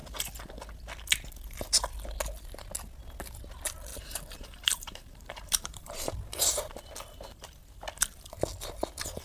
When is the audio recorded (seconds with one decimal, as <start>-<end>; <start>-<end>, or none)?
0.0-3.9; 6.1-9.2

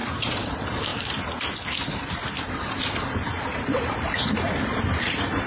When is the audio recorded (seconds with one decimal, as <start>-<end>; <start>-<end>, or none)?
0.0-0.5; 0.9-4.2

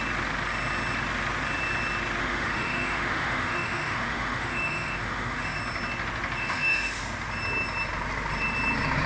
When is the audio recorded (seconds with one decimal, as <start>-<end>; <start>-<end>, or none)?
0.0-2.2; 5.6-6.4; 7.0-9.1

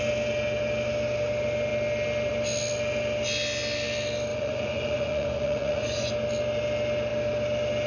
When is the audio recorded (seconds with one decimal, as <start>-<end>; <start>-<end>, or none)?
0.0-4.3; 6.1-7.9

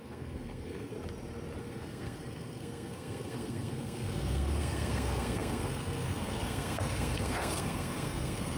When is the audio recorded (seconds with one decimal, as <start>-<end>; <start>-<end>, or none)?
0.9-1.6